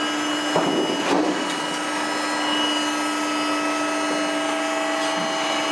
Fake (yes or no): no